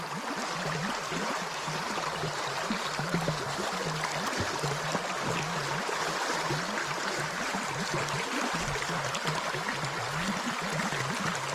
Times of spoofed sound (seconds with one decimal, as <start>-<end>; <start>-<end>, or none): 1.6-3.8; 7.0-7.9